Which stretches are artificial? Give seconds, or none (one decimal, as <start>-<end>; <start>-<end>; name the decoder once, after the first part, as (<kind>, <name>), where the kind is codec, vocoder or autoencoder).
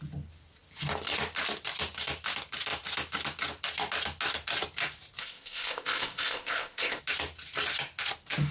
5.2-7.0 (codec, ZipCodec)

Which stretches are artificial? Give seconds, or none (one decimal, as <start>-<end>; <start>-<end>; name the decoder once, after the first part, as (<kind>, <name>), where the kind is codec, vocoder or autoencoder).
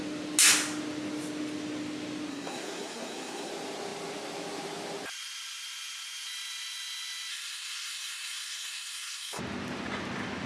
2.3-3.5 (codec, SNAC); 7.3-9.4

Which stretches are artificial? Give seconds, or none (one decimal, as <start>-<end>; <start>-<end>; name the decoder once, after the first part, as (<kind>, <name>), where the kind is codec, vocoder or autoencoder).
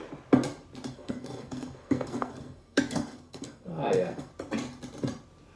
0.9-4.3 (codec, SNAC)